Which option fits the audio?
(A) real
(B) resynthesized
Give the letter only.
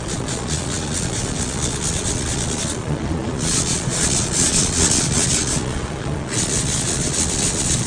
B